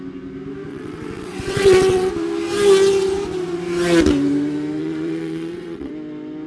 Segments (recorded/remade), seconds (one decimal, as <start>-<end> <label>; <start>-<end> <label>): 0.0-0.7 recorded; 0.7-2.1 remade; 2.1-4.8 recorded; 4.8-5.9 remade; 5.9-6.5 recorded